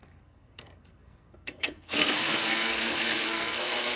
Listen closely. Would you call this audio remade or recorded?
remade